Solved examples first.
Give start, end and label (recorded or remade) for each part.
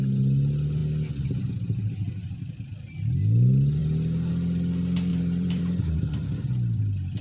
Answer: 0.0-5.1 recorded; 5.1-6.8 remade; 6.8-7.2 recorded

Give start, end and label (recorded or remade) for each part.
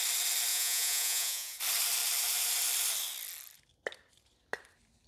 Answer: 0.0-0.5 recorded; 0.5-1.6 remade; 1.6-5.1 recorded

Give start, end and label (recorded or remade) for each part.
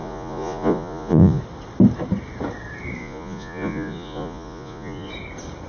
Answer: 0.0-1.4 remade; 1.4-3.0 recorded; 3.0-5.1 remade; 5.1-5.7 recorded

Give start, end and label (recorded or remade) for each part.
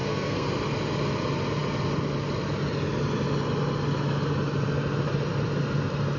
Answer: 0.0-0.5 remade; 0.5-6.2 recorded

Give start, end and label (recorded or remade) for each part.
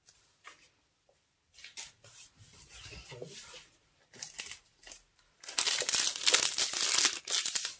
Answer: 0.0-7.8 recorded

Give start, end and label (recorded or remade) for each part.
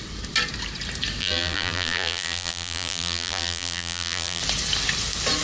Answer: 0.0-1.2 recorded; 1.2-4.4 remade; 4.4-5.4 recorded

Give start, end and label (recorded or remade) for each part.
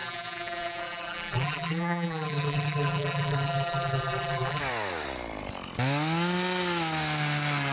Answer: 0.0-4.6 remade; 4.6-7.7 recorded